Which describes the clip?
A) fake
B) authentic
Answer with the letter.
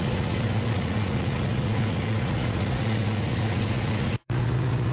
A